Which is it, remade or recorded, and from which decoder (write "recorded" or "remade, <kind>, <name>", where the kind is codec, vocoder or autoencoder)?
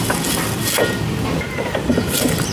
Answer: recorded